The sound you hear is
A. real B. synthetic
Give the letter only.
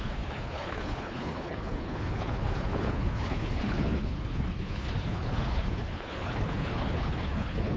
B